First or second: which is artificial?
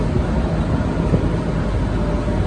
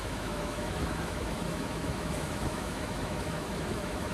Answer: second